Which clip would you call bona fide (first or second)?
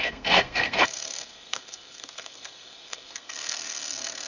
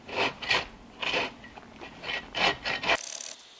second